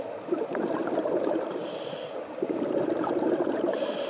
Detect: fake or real fake